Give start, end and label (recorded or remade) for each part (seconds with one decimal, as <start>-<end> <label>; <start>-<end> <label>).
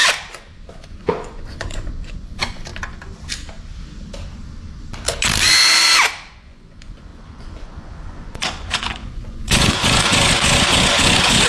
0.0-0.9 recorded; 0.9-2.7 remade; 2.7-6.3 recorded; 6.3-11.5 remade